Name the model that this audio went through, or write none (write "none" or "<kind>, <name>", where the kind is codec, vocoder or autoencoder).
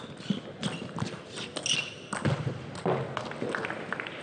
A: none